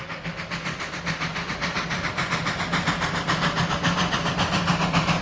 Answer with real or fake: real